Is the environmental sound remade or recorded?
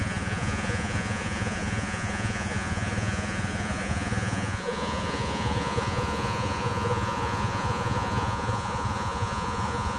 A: remade